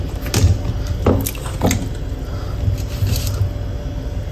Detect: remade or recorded recorded